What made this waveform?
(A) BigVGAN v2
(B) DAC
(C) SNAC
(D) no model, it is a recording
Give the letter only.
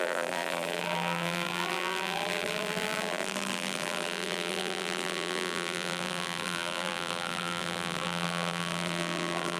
A